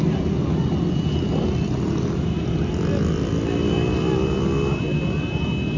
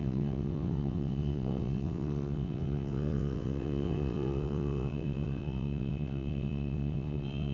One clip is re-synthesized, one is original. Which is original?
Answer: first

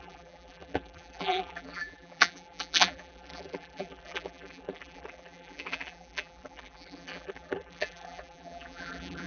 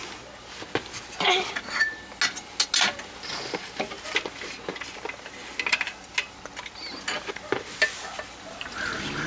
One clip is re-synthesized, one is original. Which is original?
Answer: second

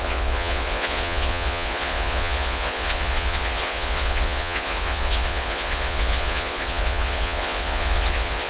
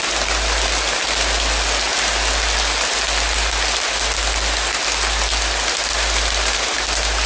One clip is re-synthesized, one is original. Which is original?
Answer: second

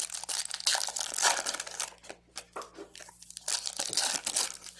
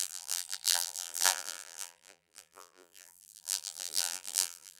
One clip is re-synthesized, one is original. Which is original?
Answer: first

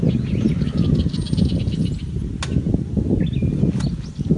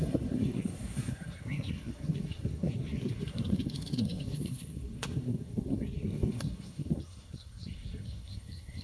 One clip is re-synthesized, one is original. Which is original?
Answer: first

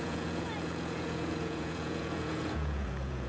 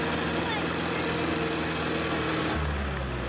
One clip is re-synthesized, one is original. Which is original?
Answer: second